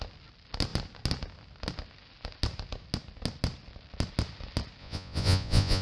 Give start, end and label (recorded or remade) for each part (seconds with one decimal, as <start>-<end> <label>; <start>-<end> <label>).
0.0-4.8 recorded; 4.8-5.8 remade